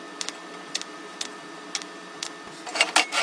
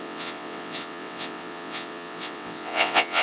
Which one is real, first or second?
first